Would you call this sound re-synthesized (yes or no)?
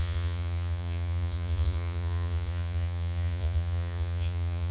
yes